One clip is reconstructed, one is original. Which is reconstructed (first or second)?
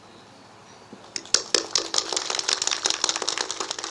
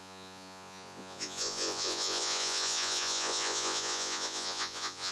second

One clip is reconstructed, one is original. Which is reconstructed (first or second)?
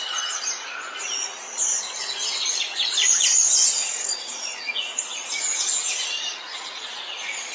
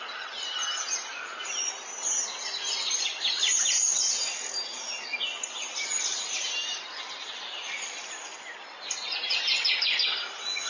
first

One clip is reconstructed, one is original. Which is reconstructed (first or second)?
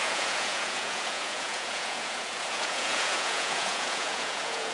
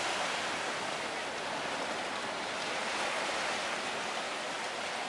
first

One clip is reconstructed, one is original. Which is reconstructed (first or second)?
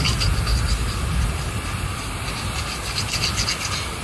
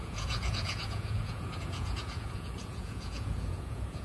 second